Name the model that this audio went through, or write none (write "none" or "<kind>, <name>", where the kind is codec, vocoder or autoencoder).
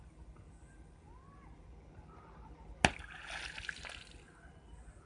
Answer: none